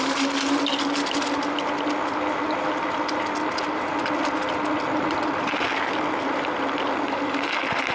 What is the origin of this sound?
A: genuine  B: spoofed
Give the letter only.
A